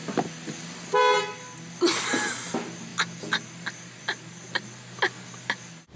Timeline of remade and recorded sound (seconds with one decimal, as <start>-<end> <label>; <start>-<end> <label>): 0.0-6.0 recorded